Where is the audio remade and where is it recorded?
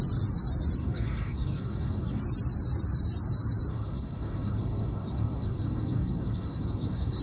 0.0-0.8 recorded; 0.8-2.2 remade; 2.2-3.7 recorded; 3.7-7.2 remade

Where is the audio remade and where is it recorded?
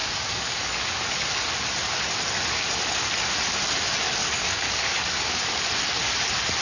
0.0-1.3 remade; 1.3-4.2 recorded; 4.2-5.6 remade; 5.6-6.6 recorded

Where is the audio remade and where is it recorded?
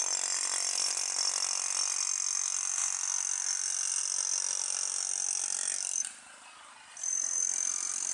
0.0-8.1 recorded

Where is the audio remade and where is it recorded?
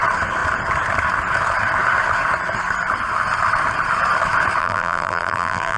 0.0-4.6 recorded; 4.6-5.8 remade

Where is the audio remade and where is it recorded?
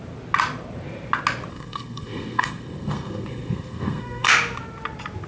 0.0-1.5 recorded; 1.5-4.3 remade; 4.3-5.3 recorded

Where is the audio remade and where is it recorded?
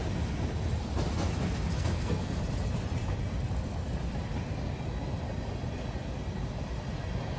0.0-1.8 recorded; 1.8-2.4 remade; 2.4-7.4 recorded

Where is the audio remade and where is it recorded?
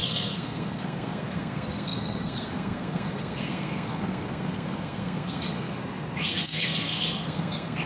0.0-7.9 remade